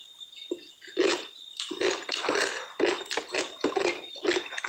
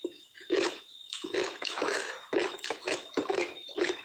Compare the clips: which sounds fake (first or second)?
second